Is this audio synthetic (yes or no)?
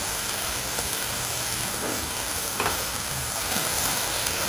yes